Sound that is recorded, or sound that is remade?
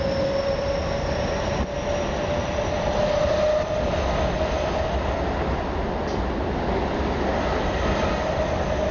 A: recorded